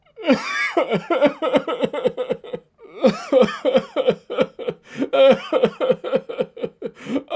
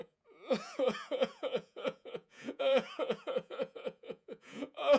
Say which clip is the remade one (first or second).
second